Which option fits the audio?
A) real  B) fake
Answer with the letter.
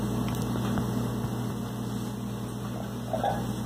A